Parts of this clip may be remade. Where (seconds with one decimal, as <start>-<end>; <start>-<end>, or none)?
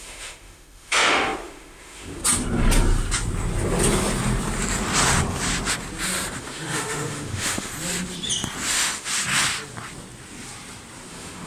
0.0-2.2; 6.4-7.7; 8.7-9.1; 11.1-11.5